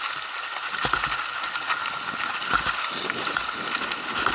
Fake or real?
real